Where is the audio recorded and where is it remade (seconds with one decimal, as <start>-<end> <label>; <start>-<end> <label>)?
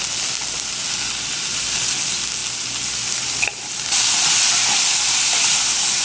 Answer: 0.0-6.0 recorded